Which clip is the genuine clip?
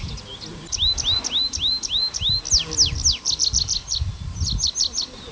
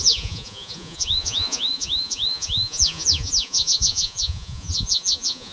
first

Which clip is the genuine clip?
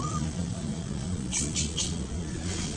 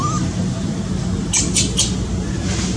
second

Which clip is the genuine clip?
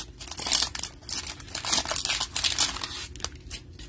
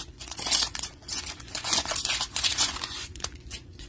first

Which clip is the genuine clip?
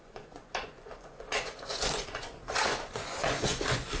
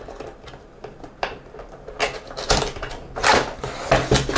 second